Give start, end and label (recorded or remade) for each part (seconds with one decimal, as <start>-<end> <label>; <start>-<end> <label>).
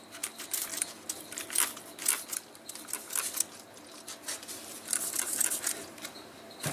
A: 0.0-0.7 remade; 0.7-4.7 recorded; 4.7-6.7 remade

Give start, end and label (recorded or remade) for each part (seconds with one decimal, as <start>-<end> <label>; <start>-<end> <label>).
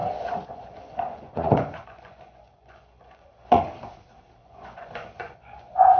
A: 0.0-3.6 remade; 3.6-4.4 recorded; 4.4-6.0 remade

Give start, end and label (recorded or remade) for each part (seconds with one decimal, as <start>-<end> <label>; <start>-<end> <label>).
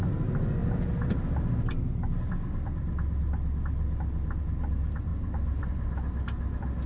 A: 0.0-6.9 recorded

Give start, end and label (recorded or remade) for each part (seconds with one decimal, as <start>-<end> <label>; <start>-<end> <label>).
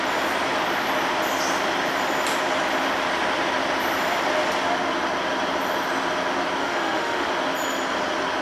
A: 0.0-6.6 recorded; 6.6-7.3 remade; 7.3-8.4 recorded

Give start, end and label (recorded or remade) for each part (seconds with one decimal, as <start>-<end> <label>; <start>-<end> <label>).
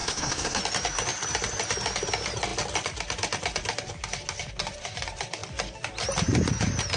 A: 0.0-0.6 remade; 0.6-7.0 recorded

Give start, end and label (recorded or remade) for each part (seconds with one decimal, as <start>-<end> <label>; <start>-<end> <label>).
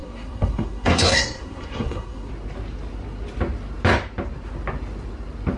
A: 0.0-2.3 remade; 2.3-5.6 recorded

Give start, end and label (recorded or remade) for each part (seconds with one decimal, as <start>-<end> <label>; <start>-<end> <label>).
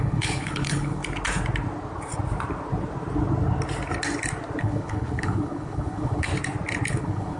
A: 0.0-1.0 remade; 1.0-4.6 recorded; 4.6-6.3 remade; 6.3-6.9 recorded; 6.9-7.4 remade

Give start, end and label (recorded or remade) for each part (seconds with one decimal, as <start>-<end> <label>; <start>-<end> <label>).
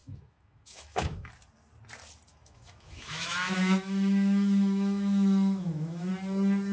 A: 0.0-1.3 remade; 1.3-2.3 recorded; 2.3-6.1 remade; 6.1-6.7 recorded